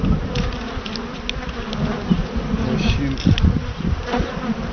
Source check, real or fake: real